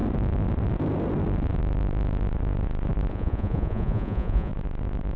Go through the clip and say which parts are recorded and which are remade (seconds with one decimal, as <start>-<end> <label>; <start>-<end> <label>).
0.0-3.1 recorded; 3.1-4.5 remade; 4.5-5.2 recorded